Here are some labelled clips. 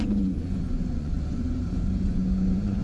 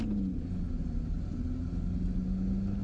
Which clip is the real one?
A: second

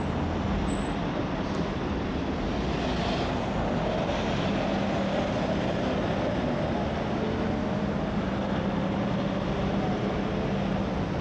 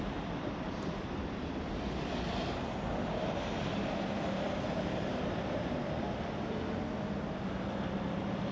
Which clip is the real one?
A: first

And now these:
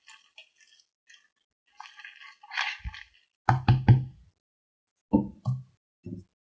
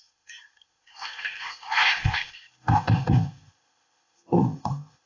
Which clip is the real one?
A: first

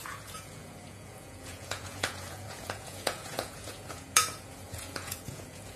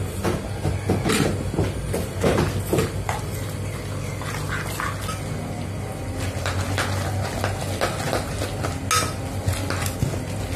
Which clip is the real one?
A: second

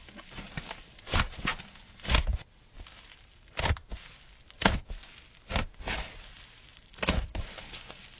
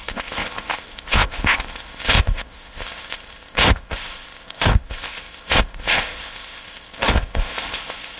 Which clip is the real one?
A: first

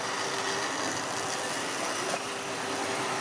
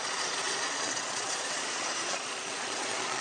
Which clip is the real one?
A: first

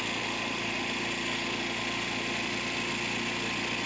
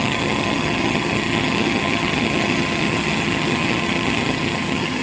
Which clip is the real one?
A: first